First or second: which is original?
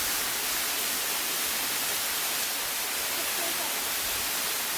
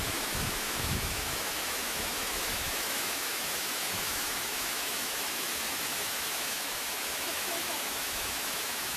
first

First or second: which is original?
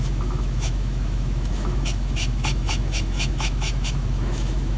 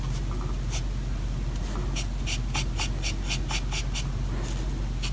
second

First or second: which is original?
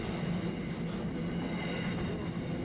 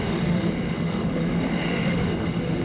first